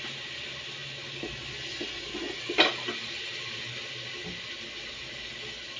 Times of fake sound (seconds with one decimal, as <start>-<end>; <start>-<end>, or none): none